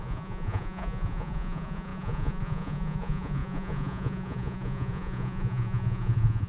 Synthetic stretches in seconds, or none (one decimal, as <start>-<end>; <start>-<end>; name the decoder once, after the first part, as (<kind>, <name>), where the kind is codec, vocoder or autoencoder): 0.0-6.5 (vocoder, Vocos)